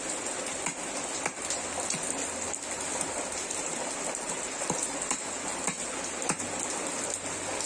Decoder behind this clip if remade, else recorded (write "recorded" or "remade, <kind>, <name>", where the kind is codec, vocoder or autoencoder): recorded